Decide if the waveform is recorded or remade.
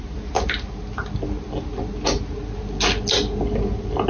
recorded